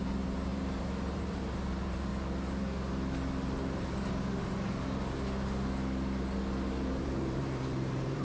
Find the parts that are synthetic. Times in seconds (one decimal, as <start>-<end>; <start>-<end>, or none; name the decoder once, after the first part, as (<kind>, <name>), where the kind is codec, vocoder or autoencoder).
0.0-2.1 (vocoder, BigVGAN v2); 7.0-8.2